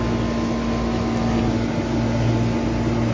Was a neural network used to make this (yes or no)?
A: no